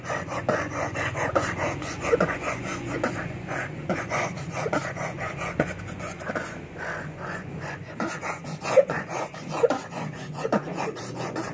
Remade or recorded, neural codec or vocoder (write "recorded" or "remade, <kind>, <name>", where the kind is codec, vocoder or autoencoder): remade, vocoder, Vocos